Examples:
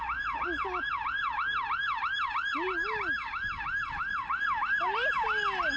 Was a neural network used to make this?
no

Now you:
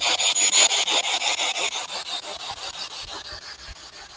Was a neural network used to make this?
no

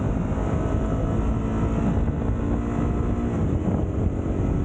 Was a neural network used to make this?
no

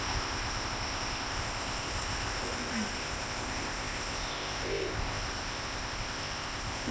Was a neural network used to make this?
yes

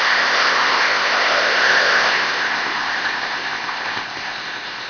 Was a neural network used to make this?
yes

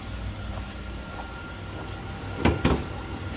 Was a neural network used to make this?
no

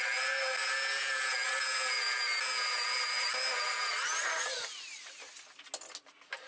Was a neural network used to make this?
no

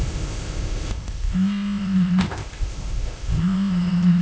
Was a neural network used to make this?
yes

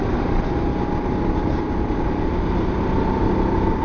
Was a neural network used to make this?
no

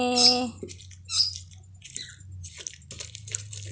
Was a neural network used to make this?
no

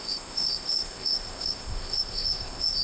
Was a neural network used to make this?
yes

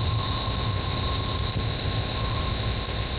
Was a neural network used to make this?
yes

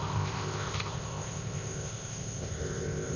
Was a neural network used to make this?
yes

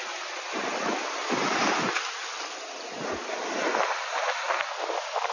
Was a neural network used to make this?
no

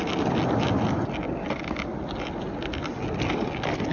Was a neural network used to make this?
no